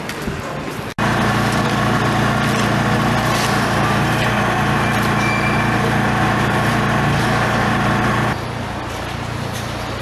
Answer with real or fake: real